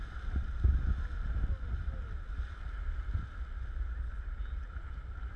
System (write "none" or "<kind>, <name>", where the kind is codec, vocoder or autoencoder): none